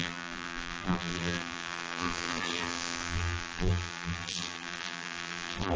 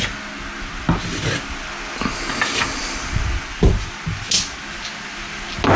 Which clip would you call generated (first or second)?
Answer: first